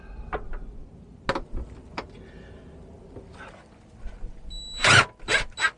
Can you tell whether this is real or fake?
real